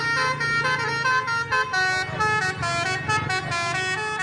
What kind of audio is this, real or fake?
real